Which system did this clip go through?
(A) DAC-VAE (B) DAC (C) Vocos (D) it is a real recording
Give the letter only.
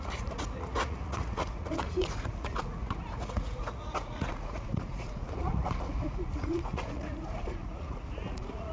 C